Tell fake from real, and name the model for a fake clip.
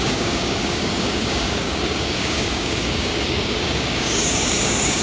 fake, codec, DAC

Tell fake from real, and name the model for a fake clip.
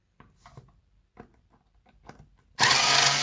real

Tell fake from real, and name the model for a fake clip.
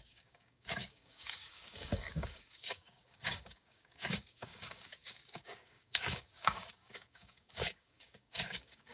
fake, codec, DAC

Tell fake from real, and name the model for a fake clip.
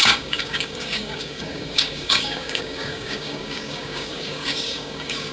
fake, codec, DAC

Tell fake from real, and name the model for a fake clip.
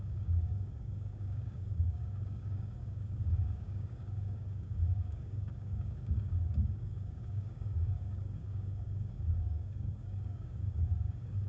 fake, codec, DAC